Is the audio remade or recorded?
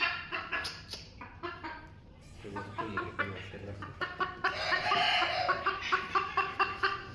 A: remade